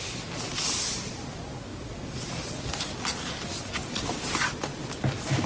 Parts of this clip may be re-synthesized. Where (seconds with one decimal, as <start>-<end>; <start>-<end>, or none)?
none